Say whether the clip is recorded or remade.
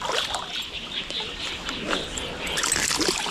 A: recorded